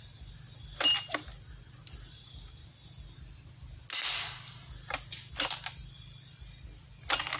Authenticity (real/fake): real